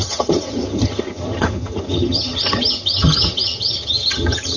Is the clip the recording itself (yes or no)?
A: no